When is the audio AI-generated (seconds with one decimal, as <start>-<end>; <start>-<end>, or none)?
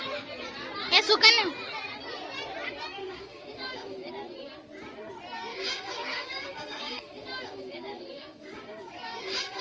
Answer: 3.0-4.1; 5.5-9.6